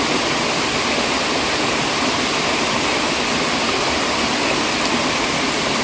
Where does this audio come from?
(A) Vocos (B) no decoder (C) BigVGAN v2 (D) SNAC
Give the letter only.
B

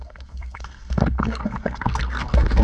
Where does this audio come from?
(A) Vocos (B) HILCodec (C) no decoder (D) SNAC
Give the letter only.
D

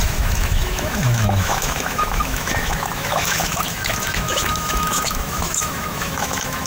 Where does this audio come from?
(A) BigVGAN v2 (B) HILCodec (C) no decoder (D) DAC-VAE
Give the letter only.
D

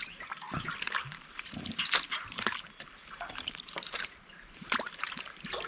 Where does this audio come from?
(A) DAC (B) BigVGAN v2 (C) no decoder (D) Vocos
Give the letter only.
B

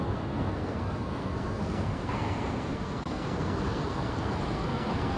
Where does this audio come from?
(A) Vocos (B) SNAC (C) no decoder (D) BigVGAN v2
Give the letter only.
B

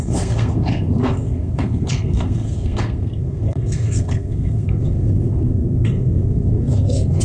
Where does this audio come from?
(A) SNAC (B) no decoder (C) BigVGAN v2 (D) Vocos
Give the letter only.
A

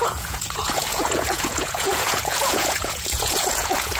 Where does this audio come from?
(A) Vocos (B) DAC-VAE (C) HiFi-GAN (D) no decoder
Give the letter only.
A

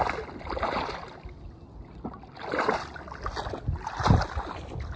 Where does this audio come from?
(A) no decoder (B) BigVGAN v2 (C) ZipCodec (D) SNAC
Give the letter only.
A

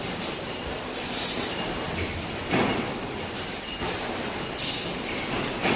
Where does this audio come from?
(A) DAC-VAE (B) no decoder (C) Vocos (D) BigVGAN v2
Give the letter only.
D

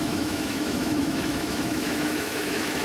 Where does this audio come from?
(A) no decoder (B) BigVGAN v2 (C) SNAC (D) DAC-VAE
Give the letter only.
D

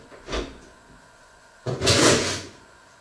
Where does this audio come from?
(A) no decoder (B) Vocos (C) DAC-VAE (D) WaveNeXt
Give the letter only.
B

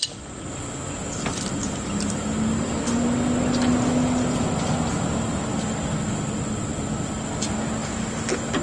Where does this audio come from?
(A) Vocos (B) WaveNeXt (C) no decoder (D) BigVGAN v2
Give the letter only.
C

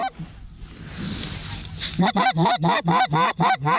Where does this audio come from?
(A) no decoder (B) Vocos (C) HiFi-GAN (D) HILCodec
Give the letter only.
A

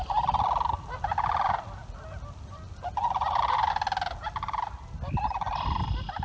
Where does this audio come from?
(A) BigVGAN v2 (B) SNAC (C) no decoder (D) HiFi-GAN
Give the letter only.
C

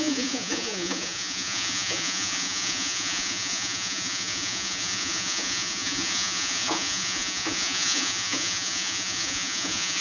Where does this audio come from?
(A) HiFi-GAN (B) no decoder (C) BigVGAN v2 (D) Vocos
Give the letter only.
D